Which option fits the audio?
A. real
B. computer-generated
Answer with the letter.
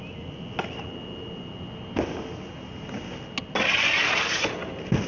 A